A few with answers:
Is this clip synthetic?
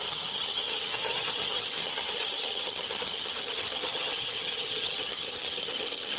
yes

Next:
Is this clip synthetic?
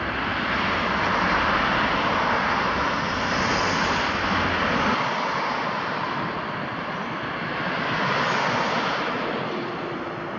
no